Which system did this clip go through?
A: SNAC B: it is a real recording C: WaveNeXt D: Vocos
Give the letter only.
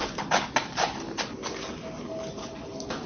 B